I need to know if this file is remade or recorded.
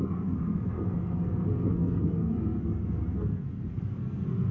remade